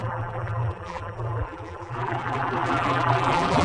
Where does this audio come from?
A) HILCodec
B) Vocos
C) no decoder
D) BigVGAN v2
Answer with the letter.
D